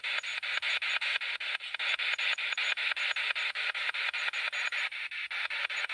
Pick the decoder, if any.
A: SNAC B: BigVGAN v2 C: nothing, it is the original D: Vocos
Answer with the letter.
C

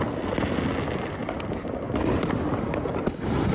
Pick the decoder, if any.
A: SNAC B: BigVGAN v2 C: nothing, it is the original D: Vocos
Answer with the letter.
C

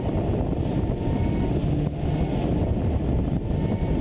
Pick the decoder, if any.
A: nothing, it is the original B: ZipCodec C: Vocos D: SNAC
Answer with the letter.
A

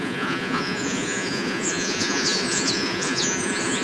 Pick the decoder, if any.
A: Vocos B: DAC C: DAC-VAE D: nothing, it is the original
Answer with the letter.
A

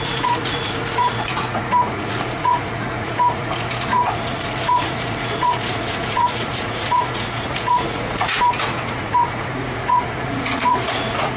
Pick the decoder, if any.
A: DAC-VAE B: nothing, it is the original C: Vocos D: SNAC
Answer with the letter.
C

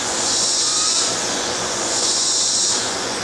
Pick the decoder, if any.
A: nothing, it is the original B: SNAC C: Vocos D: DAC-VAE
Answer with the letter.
C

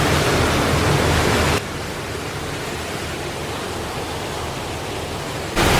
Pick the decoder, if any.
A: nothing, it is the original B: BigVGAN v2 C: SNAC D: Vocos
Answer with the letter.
A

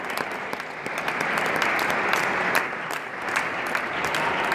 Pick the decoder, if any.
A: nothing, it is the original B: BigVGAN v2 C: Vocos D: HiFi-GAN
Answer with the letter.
A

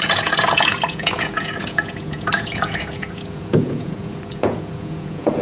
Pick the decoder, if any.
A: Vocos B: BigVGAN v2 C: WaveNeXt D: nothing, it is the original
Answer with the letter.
A